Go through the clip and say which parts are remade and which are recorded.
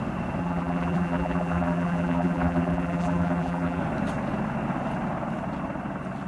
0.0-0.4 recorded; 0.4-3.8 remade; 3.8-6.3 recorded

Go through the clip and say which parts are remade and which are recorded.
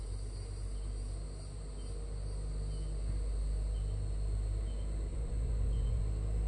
0.0-5.1 recorded; 5.1-6.0 remade; 6.0-6.5 recorded